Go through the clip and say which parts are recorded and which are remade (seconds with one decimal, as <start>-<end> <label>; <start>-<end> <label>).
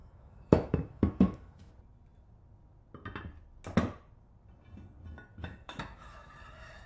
0.0-1.7 remade; 1.7-5.4 recorded; 5.4-6.3 remade; 6.3-6.9 recorded